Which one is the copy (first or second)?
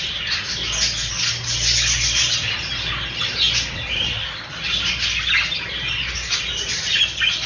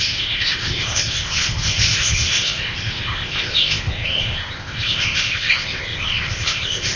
second